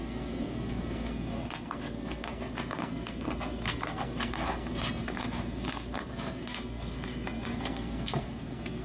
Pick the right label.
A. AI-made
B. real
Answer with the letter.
A